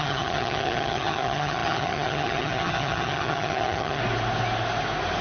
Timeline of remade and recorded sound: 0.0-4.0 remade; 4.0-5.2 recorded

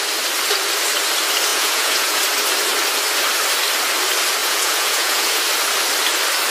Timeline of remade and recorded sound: 0.0-1.5 recorded; 1.5-2.2 remade; 2.2-4.4 recorded; 4.4-5.4 remade; 5.4-6.5 recorded

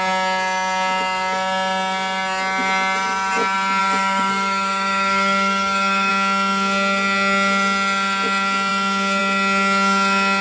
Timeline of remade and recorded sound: 0.0-3.8 recorded; 3.8-6.1 remade; 6.1-10.4 recorded

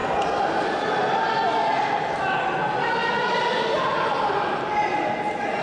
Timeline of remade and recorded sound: 0.0-5.6 recorded

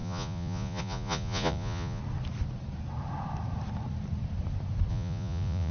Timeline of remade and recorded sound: 0.0-2.0 remade; 2.0-4.9 recorded; 4.9-5.7 remade

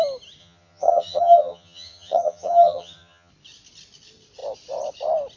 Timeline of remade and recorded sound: 0.0-0.4 recorded; 0.4-3.3 remade; 3.3-5.4 recorded

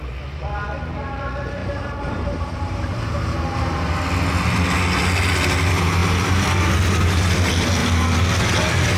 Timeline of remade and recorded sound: 0.0-1.6 recorded; 1.6-3.0 remade; 3.0-9.0 recorded

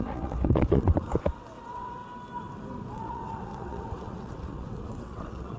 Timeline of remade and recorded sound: 0.0-2.0 remade; 2.0-2.9 recorded; 2.9-5.6 remade